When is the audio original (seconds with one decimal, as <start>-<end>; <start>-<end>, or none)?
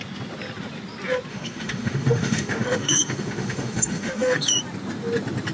0.0-1.3; 4.6-5.5